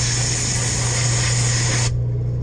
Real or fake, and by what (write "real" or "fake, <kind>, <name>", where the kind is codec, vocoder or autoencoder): real